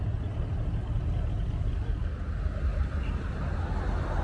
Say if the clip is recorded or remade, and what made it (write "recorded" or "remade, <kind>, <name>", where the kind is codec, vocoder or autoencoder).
recorded